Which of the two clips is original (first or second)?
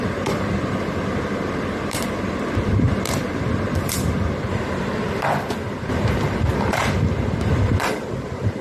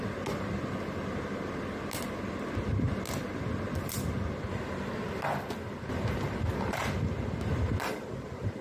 second